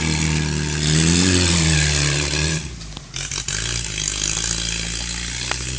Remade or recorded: recorded